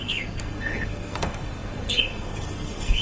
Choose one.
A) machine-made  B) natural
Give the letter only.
A